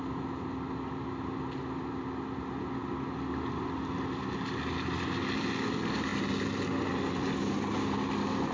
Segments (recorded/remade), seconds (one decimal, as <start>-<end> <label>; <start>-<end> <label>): 0.0-8.5 recorded